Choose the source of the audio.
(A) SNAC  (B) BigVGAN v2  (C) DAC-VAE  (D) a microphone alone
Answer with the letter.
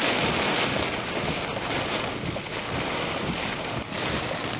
D